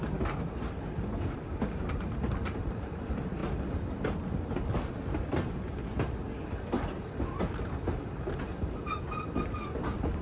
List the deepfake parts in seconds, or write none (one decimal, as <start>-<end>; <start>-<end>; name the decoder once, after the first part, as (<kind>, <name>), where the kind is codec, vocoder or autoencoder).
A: 1.4-1.9 (codec, DAC)